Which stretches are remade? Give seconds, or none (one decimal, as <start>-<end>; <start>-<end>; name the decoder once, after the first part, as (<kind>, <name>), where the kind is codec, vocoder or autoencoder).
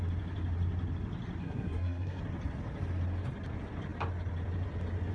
1.4-2.2 (codec, SNAC)